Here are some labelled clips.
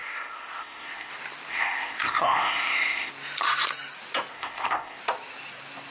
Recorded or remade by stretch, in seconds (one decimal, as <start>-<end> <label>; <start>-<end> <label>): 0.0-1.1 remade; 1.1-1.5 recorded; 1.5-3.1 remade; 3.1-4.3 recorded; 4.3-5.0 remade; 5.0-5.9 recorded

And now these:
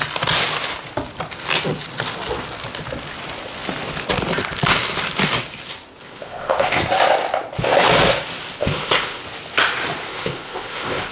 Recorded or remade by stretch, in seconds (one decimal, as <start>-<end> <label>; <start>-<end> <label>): 0.0-6.0 recorded; 6.0-6.8 remade; 6.8-8.6 recorded; 8.6-9.2 remade; 9.2-10.1 recorded; 10.1-11.1 remade

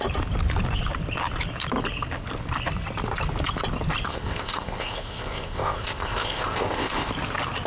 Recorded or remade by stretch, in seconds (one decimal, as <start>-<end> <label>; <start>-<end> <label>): 0.0-4.1 recorded; 4.1-7.1 remade; 7.1-7.7 recorded

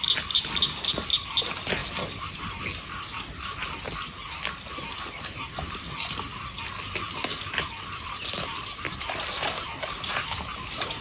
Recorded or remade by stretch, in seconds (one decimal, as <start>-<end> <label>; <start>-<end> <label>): 0.0-11.0 recorded